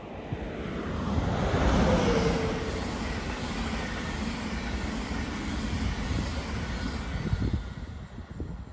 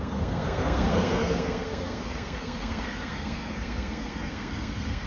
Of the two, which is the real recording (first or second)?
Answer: first